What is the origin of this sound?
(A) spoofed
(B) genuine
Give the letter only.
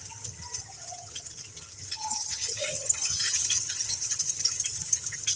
A